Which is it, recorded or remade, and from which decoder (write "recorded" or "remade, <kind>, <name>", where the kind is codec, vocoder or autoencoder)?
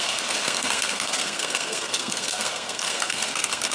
remade, codec, SNAC